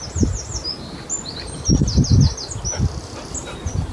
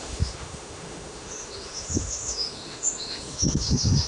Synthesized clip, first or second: second